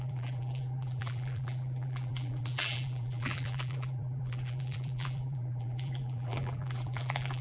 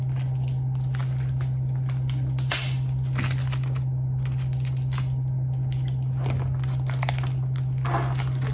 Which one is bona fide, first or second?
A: second